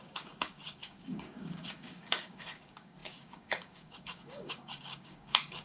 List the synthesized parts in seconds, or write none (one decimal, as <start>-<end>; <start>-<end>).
0.0-5.6